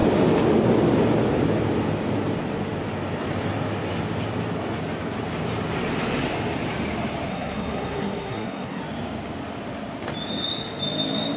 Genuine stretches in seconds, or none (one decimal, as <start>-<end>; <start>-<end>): 0.0-7.3; 8.8-11.4